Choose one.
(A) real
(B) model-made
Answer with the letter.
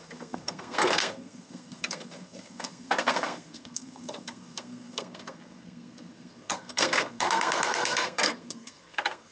B